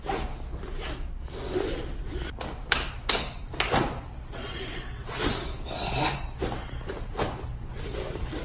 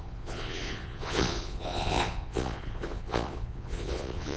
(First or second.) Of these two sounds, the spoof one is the second